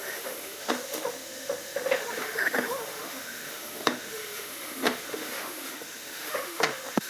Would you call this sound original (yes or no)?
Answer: no